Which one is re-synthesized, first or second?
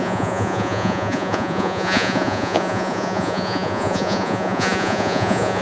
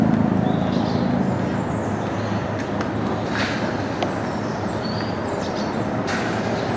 first